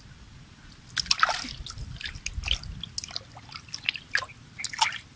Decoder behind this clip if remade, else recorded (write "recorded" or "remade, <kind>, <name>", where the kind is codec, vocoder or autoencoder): recorded